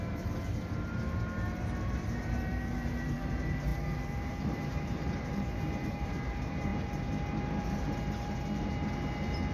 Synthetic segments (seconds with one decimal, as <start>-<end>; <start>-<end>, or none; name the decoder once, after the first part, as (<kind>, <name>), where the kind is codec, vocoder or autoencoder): 0.0-9.5 (vocoder, BigVGAN v2)